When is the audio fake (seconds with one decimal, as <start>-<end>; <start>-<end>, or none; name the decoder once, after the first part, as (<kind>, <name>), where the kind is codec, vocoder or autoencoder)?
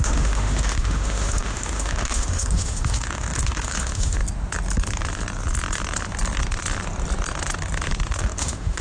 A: 0.0-4.2 (autoencoder, DAC-VAE); 8.2-8.8